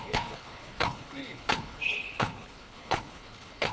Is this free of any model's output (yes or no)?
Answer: no